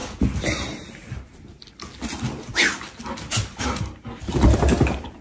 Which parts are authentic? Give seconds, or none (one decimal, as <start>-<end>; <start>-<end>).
0.0-5.2